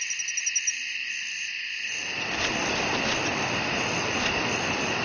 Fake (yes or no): no